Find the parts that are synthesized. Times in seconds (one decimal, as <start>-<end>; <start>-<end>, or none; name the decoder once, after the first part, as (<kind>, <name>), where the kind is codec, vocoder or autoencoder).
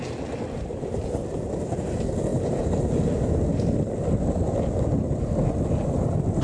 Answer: none